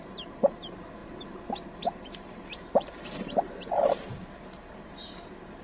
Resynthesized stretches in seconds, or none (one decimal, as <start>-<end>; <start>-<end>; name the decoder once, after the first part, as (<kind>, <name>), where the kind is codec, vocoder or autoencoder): 0.0-1.0 (vocoder, BigVGAN v2); 1.8-4.1; 4.7-5.6

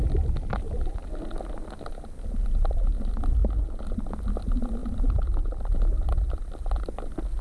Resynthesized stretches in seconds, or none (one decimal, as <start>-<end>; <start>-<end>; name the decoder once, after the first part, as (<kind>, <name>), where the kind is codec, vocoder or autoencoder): 4.8-5.6 (vocoder, BigVGAN v2)

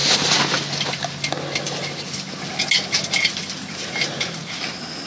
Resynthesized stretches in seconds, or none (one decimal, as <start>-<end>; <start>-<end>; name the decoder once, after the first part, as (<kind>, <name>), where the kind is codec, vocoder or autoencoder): none

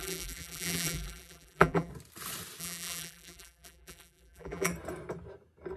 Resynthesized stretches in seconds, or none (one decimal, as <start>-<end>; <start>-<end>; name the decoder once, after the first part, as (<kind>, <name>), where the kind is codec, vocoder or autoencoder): 0.0-1.9 (vocoder, BigVGAN v2); 2.6-4.7